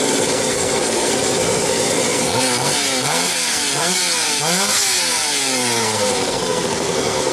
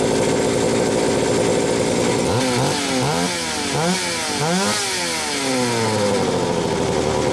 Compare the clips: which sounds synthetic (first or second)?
first